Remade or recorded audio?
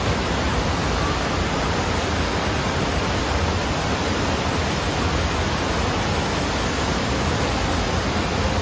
recorded